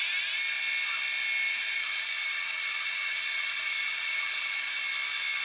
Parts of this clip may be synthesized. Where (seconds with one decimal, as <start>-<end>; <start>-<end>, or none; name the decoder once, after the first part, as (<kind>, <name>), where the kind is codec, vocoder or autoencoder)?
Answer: 1.5-4.7 (vocoder, Vocos)